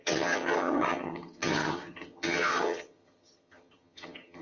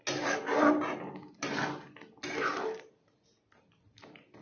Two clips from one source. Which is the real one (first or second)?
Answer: second